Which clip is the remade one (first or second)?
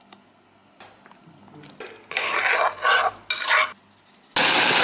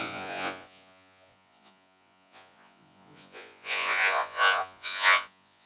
second